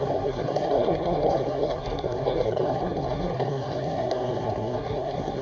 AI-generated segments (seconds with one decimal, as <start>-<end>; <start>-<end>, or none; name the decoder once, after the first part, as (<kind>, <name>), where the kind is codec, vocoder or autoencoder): 0.0-5.4 (codec, SNAC)